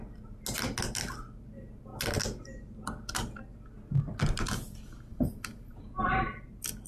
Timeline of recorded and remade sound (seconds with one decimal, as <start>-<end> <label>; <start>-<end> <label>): 0.0-5.1 recorded; 5.1-6.2 remade; 6.2-6.9 recorded